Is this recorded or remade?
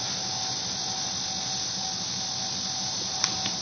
recorded